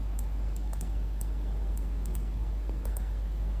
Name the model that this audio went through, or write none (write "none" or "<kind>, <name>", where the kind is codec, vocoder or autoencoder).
codec, SNAC